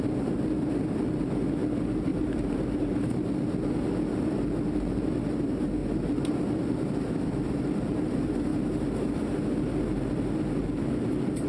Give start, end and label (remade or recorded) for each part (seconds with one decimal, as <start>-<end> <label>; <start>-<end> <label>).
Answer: 0.0-2.1 recorded; 2.1-3.3 remade; 3.3-5.8 recorded; 5.8-6.4 remade; 6.4-11.5 recorded